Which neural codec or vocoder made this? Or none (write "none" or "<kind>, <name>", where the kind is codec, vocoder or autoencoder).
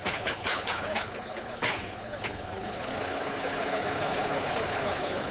codec, HILCodec